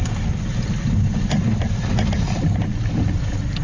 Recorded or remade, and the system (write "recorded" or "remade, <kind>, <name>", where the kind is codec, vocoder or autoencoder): recorded